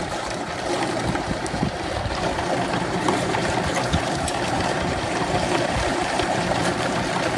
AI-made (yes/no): yes